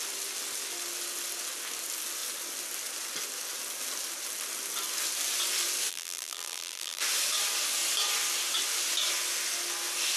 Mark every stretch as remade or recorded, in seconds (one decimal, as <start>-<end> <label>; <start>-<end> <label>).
0.0-5.9 recorded; 5.9-7.0 remade; 7.0-10.2 recorded